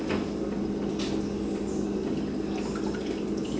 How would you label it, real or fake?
real